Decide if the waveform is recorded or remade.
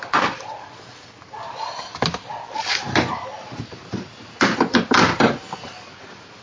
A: recorded